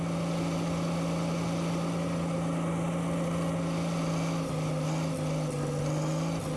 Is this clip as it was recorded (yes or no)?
yes